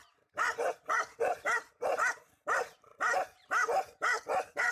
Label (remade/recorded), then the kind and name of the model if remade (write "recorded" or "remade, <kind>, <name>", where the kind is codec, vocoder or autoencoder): remade, vocoder, BigVGAN v2